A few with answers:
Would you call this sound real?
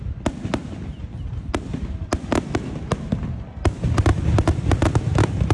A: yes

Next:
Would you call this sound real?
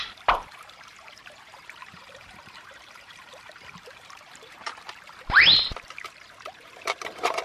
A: no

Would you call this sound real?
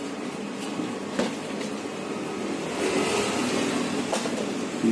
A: yes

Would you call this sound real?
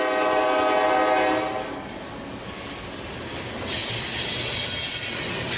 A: yes